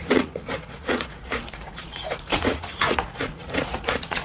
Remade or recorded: remade